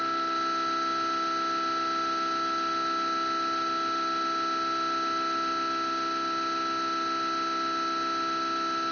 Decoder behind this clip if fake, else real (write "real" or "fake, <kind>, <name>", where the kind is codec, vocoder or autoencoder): real